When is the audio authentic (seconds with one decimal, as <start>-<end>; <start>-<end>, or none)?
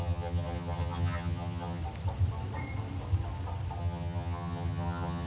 1.8-3.8